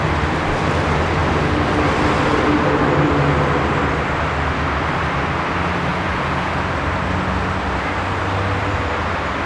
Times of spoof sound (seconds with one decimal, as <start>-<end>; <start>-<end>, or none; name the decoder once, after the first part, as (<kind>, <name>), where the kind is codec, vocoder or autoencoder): 5.9-6.5 (vocoder, Vocos)